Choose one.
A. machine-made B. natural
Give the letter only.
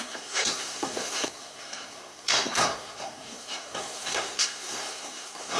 A